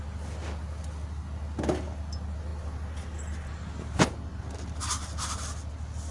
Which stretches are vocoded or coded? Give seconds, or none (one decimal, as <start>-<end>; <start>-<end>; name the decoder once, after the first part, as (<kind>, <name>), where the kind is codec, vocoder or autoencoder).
none